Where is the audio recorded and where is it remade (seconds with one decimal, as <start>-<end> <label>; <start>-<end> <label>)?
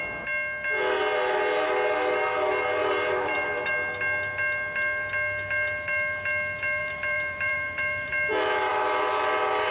0.0-2.8 recorded; 2.8-3.7 remade; 3.7-6.8 recorded; 6.8-8.1 remade; 8.1-9.7 recorded